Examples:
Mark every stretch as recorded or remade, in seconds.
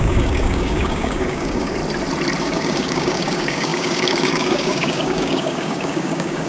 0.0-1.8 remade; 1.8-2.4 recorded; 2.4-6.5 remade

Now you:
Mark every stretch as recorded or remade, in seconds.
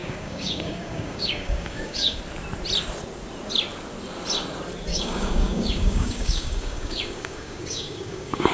0.0-2.2 remade; 2.2-4.9 recorded; 4.9-8.5 remade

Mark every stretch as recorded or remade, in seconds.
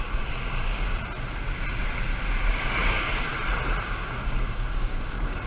0.0-1.0 remade; 1.0-2.5 recorded; 2.5-3.3 remade; 3.3-3.8 recorded; 3.8-5.5 remade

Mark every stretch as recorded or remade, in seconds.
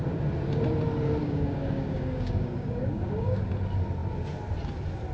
0.0-1.2 recorded; 1.2-3.5 remade; 3.5-5.1 recorded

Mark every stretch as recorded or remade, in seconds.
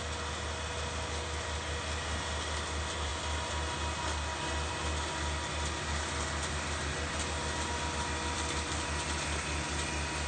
0.0-10.3 recorded